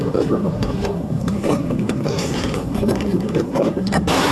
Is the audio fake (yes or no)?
yes